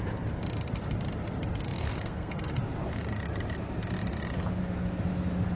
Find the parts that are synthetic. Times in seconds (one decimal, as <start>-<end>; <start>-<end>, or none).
1.8-2.5